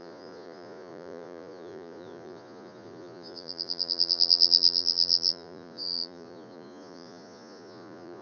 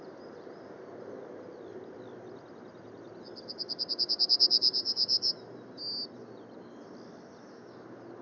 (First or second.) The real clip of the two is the second